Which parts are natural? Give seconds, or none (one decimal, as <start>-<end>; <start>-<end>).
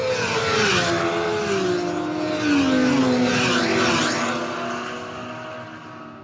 0.0-6.2